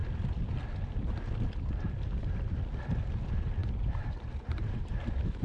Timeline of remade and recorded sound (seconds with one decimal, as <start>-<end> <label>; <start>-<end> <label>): 0.0-3.6 recorded; 3.6-4.9 remade; 4.9-5.4 recorded